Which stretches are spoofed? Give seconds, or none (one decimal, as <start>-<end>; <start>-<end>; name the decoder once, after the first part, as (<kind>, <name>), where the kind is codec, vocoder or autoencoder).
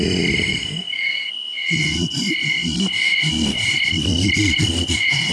0.5-1.3 (codec, DAC)